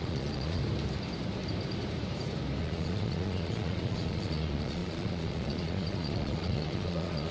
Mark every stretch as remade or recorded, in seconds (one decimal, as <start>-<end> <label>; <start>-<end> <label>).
0.0-0.6 remade; 0.6-2.6 recorded; 2.6-7.3 remade